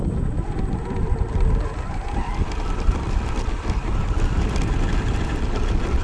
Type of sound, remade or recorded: recorded